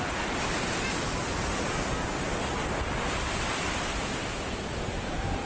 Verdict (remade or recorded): recorded